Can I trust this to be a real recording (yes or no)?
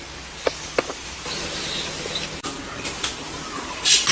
yes